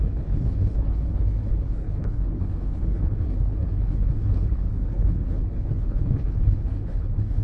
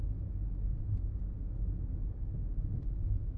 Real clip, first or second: second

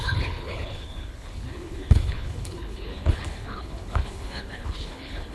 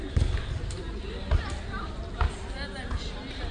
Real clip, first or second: second